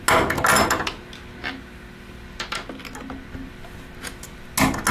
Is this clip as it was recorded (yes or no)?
yes